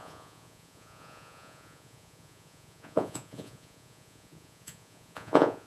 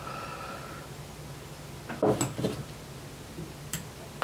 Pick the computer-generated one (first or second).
first